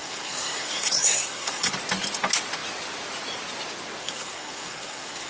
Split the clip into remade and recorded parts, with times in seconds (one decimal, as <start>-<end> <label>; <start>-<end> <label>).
0.0-1.7 remade; 1.7-4.0 recorded; 4.0-5.3 remade